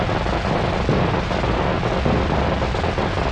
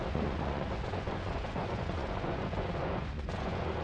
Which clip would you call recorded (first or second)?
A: first